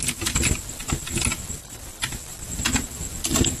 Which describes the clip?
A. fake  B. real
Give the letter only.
B